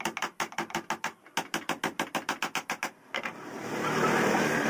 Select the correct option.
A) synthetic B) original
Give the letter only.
B